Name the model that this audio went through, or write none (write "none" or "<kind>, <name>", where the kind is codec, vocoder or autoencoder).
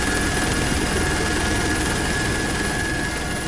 none